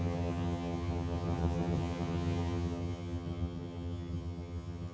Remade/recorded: remade